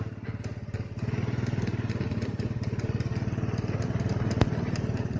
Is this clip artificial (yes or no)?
no